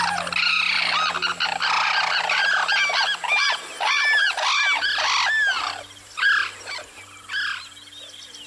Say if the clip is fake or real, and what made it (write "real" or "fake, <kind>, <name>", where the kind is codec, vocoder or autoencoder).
real